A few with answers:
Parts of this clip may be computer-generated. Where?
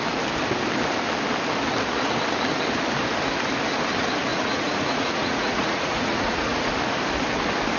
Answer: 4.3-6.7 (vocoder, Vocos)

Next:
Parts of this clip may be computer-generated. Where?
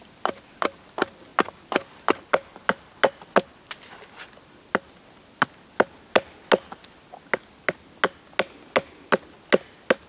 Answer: none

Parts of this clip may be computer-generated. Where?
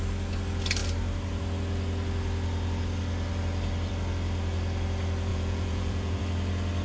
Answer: 5.3-6.2 (vocoder, Vocos)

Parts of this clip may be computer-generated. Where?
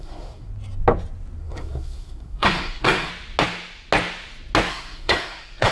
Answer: 0.0-0.5 (codec, SNAC); 1.4-3.1; 4.7-5.7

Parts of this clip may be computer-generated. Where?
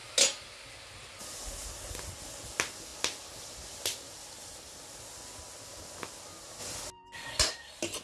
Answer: none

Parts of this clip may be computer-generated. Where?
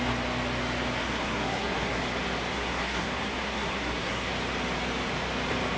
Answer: 1.0-2.0 (codec, SNAC); 2.5-4.3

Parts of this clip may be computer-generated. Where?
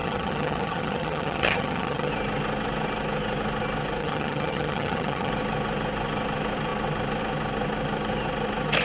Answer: 0.0-2.1 (vocoder, HiFi-GAN); 4.0-5.3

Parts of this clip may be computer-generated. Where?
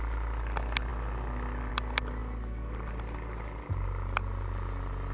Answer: none